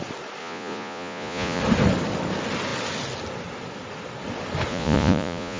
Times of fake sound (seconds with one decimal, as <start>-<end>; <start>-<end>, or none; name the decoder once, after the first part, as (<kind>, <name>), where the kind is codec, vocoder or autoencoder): 0.4-1.6 (vocoder, Vocos); 4.7-5.6